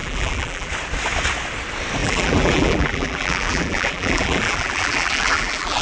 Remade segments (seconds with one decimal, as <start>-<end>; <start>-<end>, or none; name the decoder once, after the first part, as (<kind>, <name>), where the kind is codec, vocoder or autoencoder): 0.0-0.7 (vocoder, BigVGAN v2); 2.0-5.8